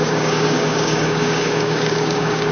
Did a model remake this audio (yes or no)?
yes